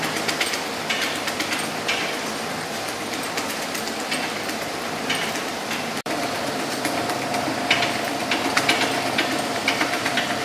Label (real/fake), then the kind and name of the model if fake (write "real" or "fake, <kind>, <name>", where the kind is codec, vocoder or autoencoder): fake, vocoder, BigVGAN v2